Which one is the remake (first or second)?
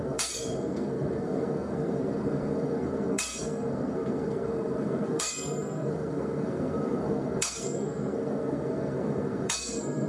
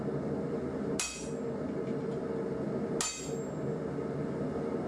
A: first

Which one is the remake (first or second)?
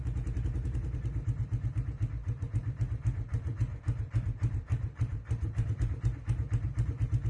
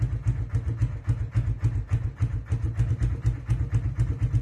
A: first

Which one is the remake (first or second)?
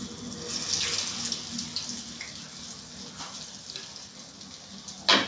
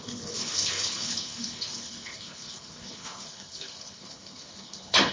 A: second